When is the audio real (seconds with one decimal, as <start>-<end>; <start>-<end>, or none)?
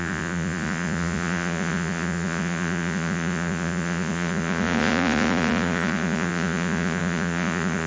none